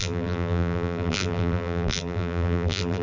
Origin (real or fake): fake